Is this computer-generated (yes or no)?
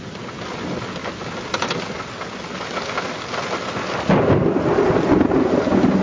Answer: no